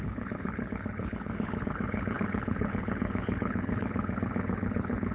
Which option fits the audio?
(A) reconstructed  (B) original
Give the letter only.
A